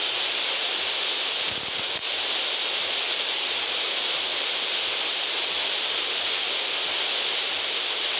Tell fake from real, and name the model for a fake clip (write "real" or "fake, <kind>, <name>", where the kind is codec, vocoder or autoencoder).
real